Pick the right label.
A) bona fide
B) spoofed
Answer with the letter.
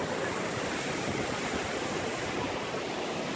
A